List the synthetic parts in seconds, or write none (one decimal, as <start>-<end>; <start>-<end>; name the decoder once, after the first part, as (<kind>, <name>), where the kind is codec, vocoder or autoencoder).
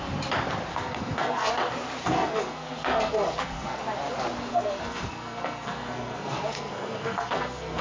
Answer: 0.7-1.5 (codec, SNAC); 2.0-3.8; 4.5-7.8